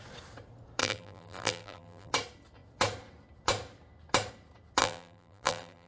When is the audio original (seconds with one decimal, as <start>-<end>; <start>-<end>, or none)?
0.0-0.8; 2.1-4.8